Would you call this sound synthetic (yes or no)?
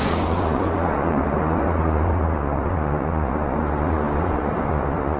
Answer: yes